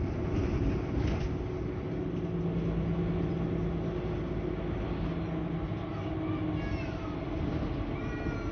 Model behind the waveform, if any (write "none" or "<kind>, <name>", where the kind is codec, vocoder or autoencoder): none